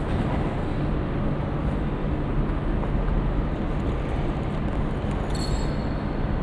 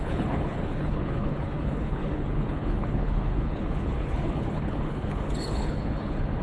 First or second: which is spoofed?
second